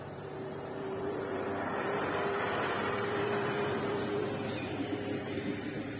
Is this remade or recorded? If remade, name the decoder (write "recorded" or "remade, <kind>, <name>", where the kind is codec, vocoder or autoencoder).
remade, vocoder, BigVGAN v2